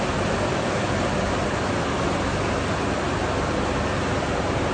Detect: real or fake real